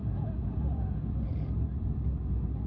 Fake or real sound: fake